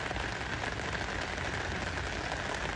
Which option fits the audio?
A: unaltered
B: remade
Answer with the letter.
A